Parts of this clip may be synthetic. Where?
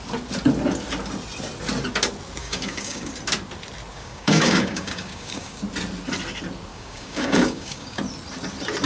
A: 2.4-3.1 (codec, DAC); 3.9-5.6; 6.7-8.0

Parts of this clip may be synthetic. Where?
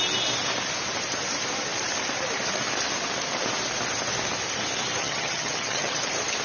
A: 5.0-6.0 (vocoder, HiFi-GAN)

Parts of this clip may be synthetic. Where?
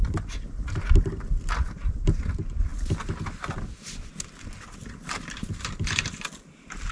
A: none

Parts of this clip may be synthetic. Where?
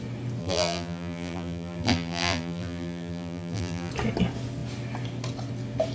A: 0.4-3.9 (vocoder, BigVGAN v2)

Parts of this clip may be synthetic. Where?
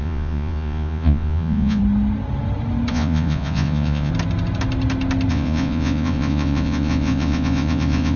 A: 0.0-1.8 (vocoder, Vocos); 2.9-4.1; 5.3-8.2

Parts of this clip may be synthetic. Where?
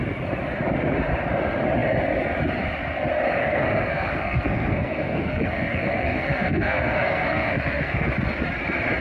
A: 3.4-8.1 (codec, SNAC)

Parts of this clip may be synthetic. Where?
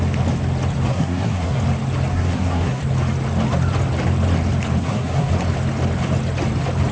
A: 0.9-1.6 (codec, SNAC); 2.1-2.8; 4.8-5.3